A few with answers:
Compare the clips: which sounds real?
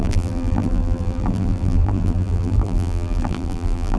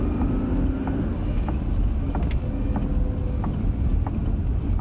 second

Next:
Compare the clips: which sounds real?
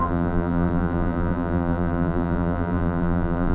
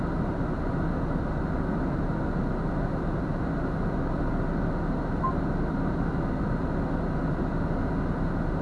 second